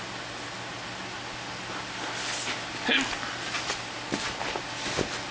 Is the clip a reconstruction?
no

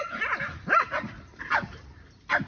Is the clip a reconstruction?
no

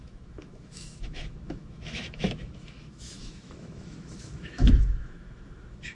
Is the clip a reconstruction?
yes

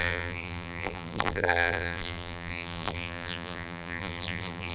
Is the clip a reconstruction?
yes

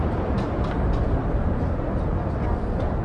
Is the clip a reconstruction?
no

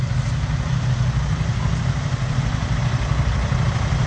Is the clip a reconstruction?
no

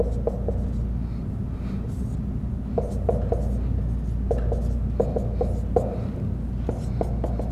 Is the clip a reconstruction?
no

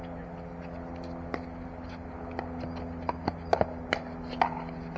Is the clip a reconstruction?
no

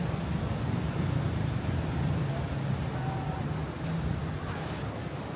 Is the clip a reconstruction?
no